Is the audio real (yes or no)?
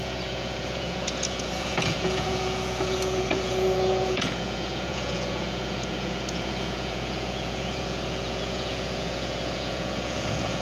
no